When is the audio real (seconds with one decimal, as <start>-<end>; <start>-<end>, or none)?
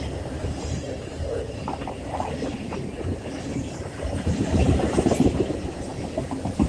0.0-0.4; 2.8-3.5; 5.0-6.7